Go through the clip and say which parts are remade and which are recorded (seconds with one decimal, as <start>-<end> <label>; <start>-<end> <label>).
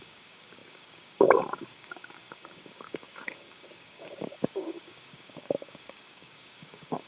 0.0-7.1 remade